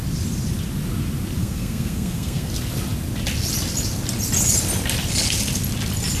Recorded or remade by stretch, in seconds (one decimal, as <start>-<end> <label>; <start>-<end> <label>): 0.0-1.4 recorded; 1.4-2.5 remade; 2.5-6.2 recorded